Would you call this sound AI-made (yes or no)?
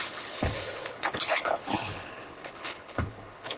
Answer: yes